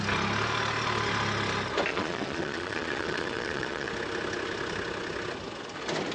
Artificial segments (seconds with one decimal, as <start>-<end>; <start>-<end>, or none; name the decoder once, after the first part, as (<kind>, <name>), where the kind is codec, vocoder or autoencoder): 1.9-3.9 (vocoder, Vocos)

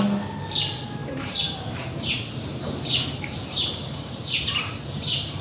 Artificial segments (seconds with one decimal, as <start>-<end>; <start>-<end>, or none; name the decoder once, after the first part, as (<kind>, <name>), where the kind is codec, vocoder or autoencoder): 1.0-1.6 (vocoder, BigVGAN v2); 2.5-5.4

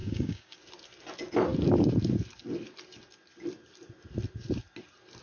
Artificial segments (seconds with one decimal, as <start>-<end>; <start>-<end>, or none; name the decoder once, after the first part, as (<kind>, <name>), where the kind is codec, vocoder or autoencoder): 0.0-0.6 (codec, DAC)

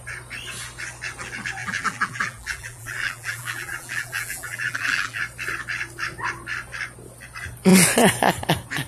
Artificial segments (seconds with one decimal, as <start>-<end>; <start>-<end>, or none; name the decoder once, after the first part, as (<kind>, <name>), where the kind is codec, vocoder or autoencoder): 1.6-5.2 (vocoder, BigVGAN v2)